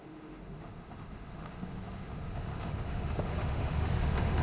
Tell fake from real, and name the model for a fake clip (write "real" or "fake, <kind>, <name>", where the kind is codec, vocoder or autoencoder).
fake, autoencoder, DAC-VAE